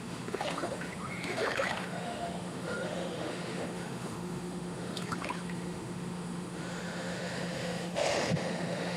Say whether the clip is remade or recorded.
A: remade